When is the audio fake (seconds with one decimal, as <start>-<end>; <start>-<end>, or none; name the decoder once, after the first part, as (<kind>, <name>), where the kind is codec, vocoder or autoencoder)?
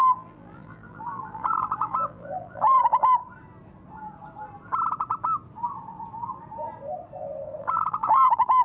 0.0-3.2 (vocoder, BigVGAN v2); 7.6-8.6